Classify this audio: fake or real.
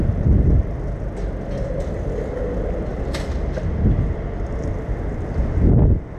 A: real